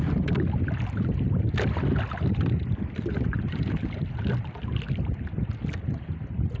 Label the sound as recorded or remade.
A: recorded